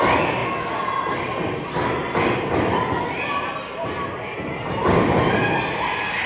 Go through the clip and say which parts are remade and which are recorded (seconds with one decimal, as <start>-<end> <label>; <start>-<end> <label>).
0.0-6.3 recorded

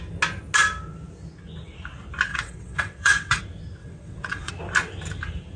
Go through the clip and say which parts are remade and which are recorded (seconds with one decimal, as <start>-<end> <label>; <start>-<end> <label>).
0.0-2.3 recorded; 2.3-3.4 remade; 3.4-3.8 recorded; 3.8-4.5 remade; 4.5-5.6 recorded

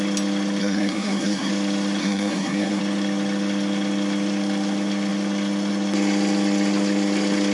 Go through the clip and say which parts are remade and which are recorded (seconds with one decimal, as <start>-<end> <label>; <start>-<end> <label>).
0.0-0.6 recorded; 0.6-1.5 remade; 1.5-2.0 recorded; 2.0-2.8 remade; 2.8-7.5 recorded

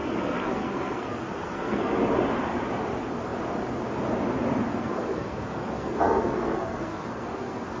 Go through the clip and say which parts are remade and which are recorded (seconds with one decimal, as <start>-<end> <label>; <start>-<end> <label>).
0.0-1.9 remade; 1.9-4.7 recorded; 4.7-7.8 remade